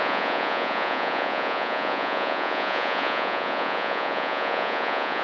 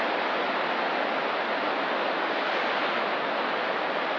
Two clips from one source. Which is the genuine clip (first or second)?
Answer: second